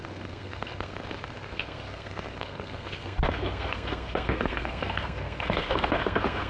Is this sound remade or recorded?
remade